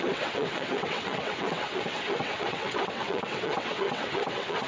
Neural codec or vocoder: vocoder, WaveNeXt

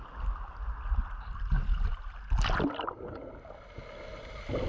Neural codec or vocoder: none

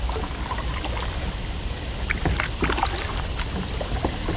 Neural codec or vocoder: none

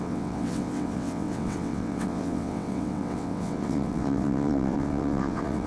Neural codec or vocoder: vocoder, WaveNeXt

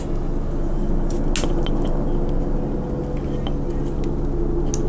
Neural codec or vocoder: none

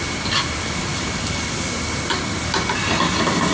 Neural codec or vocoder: none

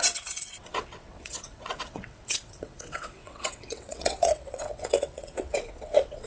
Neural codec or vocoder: vocoder, WaveNeXt